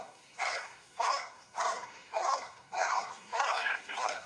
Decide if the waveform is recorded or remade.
remade